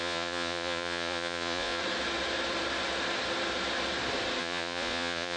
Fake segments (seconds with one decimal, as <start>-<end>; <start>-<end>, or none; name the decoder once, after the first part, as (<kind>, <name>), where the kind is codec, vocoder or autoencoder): 0.0-1.8 (vocoder, Vocos); 4.4-5.4